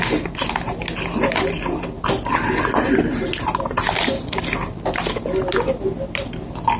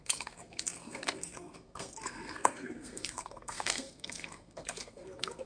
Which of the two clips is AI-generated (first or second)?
second